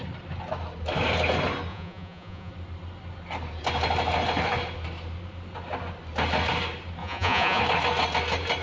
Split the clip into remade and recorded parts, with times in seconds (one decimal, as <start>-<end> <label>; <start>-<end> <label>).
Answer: 0.0-1.7 recorded; 1.7-2.5 remade; 2.5-7.0 recorded; 7.0-7.6 remade; 7.6-8.6 recorded